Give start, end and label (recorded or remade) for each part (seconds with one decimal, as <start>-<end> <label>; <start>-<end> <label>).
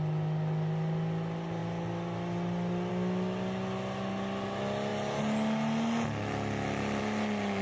0.0-7.6 recorded